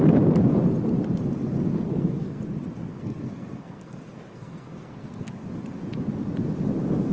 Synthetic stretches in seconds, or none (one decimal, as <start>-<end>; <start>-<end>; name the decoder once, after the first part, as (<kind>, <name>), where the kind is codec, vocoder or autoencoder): 1.7-2.4 (codec, SNAC); 2.8-5.3